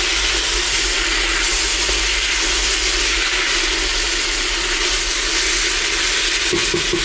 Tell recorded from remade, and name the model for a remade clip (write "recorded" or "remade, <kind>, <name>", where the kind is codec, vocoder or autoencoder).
recorded